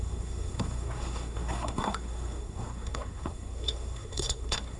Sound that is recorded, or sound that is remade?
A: remade